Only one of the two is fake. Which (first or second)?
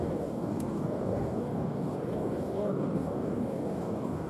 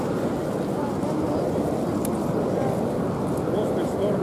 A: first